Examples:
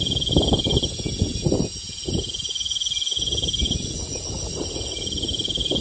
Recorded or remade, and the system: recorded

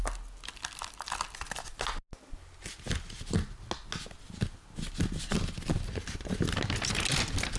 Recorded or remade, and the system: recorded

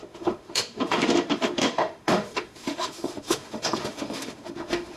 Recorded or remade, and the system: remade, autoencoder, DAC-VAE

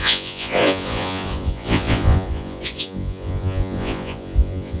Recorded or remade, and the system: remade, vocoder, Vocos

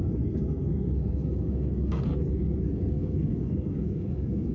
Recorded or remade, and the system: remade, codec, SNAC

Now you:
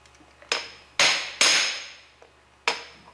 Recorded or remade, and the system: recorded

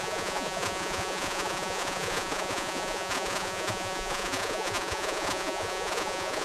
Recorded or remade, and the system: remade, vocoder, Vocos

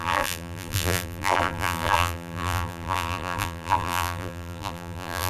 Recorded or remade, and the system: remade, vocoder, BigVGAN v2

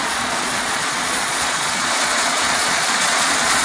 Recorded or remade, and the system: remade, vocoder, Vocos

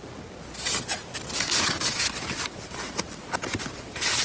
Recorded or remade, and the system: recorded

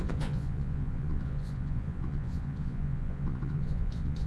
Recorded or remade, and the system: remade, vocoder, Vocos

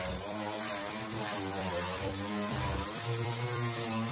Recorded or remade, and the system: remade, vocoder, BigVGAN v2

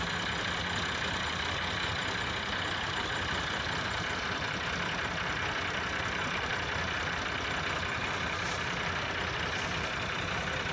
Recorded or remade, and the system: recorded